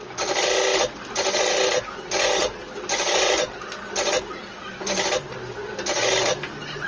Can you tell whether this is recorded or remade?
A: recorded